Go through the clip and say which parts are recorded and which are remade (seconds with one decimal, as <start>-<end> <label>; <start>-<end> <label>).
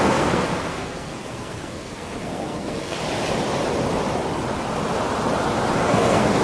0.0-3.0 remade; 3.0-5.8 recorded; 5.8-6.4 remade